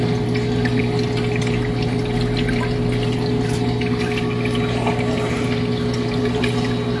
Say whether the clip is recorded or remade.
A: recorded